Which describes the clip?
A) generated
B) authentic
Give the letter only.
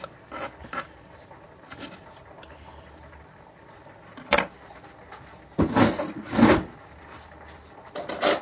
B